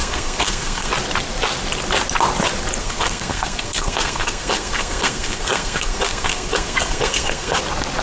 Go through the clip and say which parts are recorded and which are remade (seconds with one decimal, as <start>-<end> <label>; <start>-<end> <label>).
0.0-0.9 remade; 0.9-2.8 recorded; 2.8-7.6 remade; 7.6-8.0 recorded